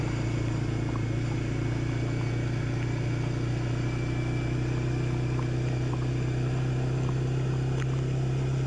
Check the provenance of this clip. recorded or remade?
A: recorded